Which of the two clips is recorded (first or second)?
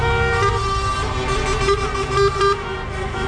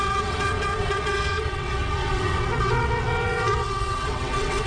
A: first